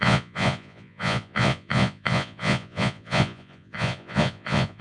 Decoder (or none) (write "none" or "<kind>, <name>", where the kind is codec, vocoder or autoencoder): vocoder, Vocos